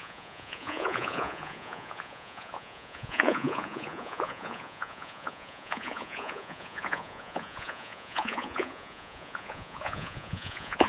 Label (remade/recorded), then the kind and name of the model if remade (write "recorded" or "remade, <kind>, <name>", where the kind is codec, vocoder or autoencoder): remade, vocoder, Vocos